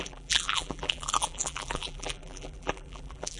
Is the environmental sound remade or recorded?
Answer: remade